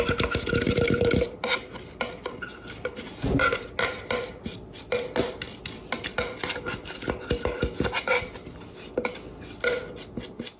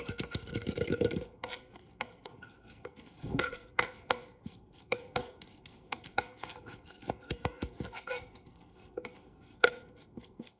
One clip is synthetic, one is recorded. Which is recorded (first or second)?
first